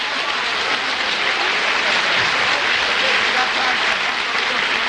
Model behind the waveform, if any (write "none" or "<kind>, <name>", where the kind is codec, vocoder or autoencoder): none